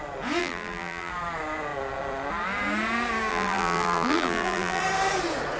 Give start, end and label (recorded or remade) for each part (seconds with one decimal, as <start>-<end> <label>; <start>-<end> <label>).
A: 0.0-0.4 recorded; 0.4-1.1 remade; 1.1-3.3 recorded; 3.3-4.8 remade; 4.8-5.6 recorded